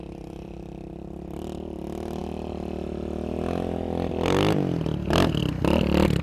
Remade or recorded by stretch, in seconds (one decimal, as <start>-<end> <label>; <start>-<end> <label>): 0.0-6.2 recorded